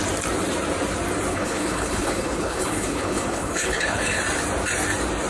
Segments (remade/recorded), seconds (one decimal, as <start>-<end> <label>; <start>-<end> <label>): 0.0-1.3 recorded; 1.3-4.2 remade; 4.2-5.3 recorded